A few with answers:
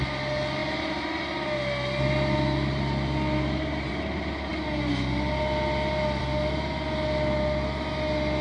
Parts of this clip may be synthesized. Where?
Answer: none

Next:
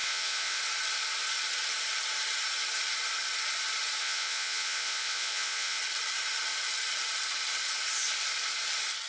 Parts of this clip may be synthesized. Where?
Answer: 0.0-0.6; 4.0-5.8

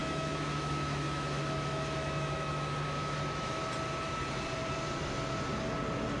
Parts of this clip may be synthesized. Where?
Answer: 0.0-3.7